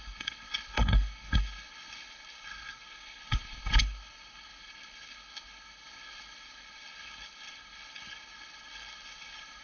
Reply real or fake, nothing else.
fake